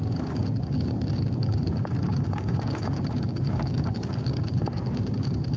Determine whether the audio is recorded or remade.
remade